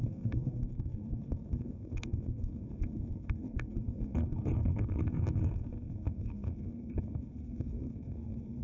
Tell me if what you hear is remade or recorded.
remade